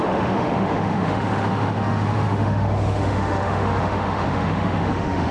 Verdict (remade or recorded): remade